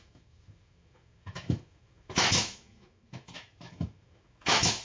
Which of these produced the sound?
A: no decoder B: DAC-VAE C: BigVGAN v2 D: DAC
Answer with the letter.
B